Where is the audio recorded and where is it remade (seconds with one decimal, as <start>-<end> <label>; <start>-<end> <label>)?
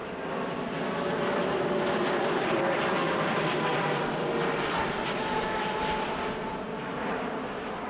0.0-1.3 recorded; 1.3-7.9 remade